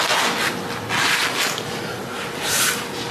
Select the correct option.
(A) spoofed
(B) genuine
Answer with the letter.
B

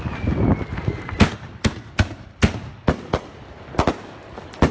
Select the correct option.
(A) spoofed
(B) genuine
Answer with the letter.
A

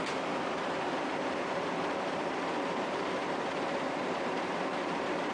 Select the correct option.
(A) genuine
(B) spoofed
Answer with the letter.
B